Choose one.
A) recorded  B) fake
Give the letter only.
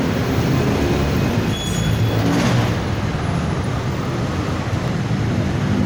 A